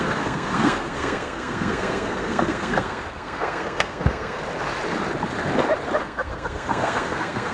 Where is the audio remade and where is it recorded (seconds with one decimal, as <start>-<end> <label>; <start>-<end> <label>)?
0.0-4.4 remade; 4.4-6.0 recorded; 6.0-7.5 remade